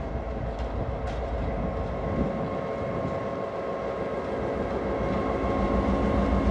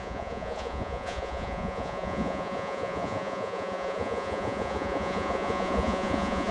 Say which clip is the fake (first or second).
second